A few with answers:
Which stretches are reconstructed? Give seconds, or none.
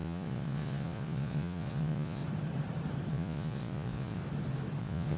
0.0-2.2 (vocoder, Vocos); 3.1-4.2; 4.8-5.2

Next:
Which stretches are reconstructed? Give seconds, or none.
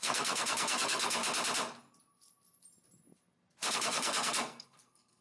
0.0-1.2 (codec, SNAC); 3.7-5.2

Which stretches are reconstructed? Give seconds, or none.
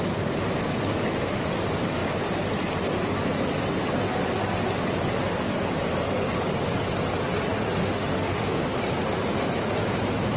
7.8-8.6 (autoencoder, DAC-VAE)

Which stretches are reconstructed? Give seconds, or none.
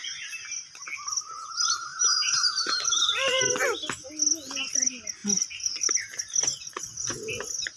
1.9-3.4 (vocoder, BigVGAN v2); 5.2-6.2